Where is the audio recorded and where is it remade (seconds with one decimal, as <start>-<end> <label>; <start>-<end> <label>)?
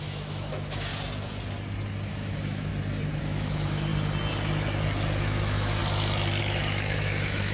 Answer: 0.0-0.9 remade; 0.9-2.1 recorded; 2.1-2.7 remade; 2.7-3.2 recorded; 3.2-3.9 remade; 3.9-5.2 recorded; 5.2-5.8 remade; 5.8-6.4 recorded; 6.4-7.5 remade